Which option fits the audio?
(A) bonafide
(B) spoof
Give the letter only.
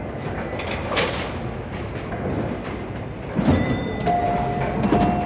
A